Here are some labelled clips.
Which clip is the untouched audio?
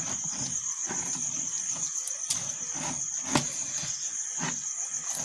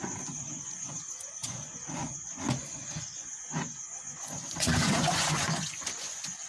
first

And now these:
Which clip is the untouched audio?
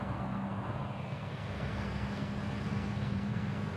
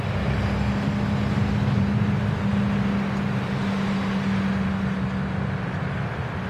second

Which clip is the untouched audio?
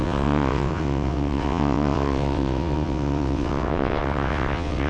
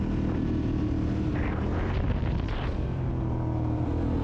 second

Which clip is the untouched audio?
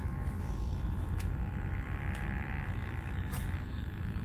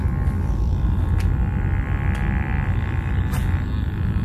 second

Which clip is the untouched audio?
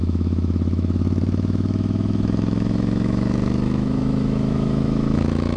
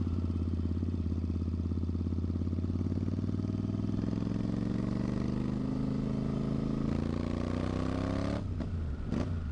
second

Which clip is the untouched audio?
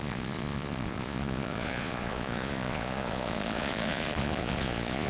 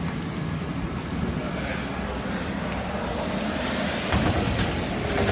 second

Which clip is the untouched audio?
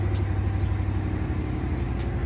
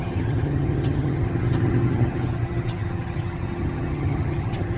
first